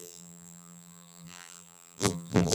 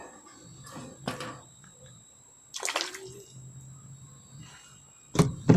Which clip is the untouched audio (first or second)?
second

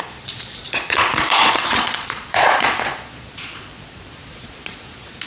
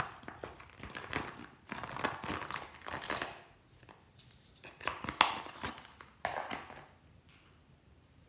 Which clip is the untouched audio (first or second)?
second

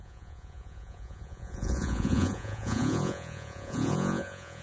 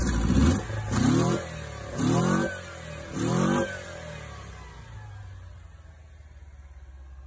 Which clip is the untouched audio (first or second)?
second